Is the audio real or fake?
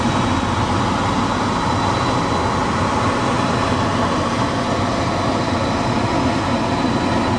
real